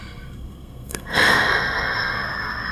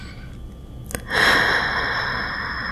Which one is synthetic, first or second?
first